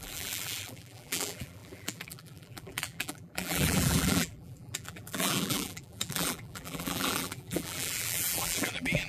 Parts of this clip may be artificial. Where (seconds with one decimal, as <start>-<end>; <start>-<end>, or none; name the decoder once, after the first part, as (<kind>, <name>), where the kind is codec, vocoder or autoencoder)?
0.0-9.1 (vocoder, BigVGAN v2)